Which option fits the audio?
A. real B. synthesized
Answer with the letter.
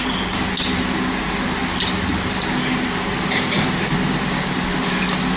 A